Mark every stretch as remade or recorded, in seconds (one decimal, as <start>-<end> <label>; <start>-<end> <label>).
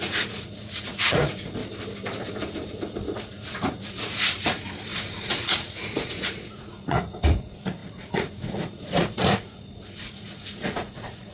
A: 0.0-1.6 remade; 1.6-2.2 recorded; 2.2-11.3 remade